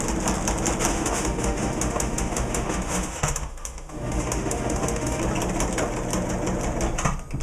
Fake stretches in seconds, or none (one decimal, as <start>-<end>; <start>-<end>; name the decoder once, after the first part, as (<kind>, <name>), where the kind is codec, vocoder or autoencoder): 0.9-5.2 (autoencoder, DAC-VAE)

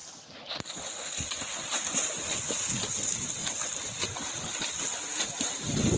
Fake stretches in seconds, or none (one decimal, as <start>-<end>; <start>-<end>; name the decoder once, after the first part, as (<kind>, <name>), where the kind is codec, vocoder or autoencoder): 2.7-3.4 (vocoder, BigVGAN v2); 5.5-6.0

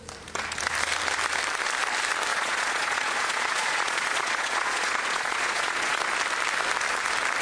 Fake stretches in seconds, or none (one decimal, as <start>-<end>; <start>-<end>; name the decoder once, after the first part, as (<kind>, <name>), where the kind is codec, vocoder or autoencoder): 2.3-6.0 (vocoder, Vocos)

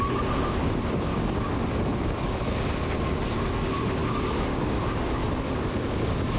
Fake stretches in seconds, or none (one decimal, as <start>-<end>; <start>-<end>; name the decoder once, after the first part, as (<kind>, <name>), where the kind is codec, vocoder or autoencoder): 0.0-1.1 (codec, DAC); 3.5-5.2; 5.9-6.4

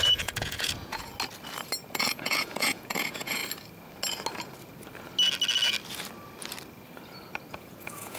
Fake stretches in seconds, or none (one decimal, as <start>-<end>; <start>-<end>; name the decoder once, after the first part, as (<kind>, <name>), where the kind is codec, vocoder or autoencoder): 0.0-1.1 (vocoder, Vocos); 1.9-3.4; 7.5-8.2

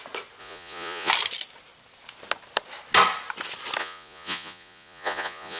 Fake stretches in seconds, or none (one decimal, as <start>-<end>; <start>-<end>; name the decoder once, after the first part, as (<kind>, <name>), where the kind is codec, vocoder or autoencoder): 0.4-1.1 (vocoder, Vocos); 3.8-5.6

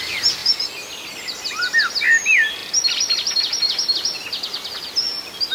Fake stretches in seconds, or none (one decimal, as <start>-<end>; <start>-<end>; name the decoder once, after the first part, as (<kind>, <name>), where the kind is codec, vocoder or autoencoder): none

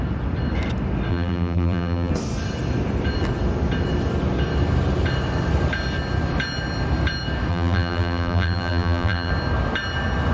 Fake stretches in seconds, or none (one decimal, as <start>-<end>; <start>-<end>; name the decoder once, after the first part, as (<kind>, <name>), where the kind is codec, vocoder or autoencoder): 1.1-2.1 (vocoder, BigVGAN v2); 7.5-9.3